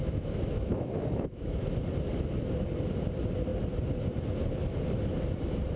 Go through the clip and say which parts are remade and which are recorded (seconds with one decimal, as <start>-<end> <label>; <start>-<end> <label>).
0.0-1.6 remade; 1.6-5.8 recorded